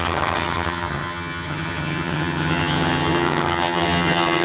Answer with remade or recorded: remade